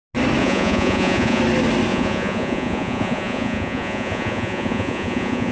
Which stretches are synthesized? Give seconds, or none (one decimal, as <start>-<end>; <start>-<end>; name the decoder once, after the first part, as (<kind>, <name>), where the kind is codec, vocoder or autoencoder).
0.4-1.4 (vocoder, Vocos); 1.9-5.5